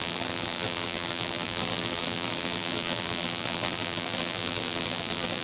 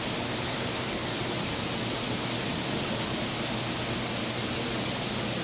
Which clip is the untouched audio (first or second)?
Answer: second